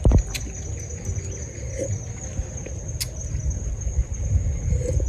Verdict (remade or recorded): recorded